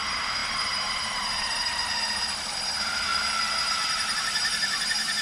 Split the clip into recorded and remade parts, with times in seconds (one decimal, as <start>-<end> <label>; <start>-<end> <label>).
0.0-3.1 remade; 3.1-3.6 recorded; 3.6-5.2 remade